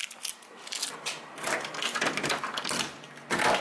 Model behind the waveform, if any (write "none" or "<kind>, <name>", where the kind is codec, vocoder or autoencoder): none